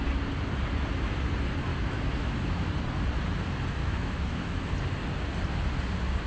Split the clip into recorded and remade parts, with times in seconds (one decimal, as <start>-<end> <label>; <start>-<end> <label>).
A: 0.0-1.7 recorded; 1.7-2.7 remade; 2.7-3.8 recorded; 3.8-4.7 remade; 4.7-6.3 recorded